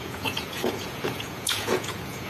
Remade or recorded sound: remade